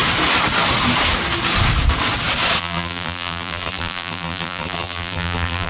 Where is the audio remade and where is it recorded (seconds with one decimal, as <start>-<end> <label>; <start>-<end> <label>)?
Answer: 0.0-2.6 recorded; 2.6-5.7 remade